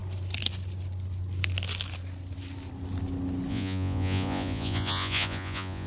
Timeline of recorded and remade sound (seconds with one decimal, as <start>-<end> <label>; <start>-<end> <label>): 0.0-3.5 recorded; 3.5-5.9 remade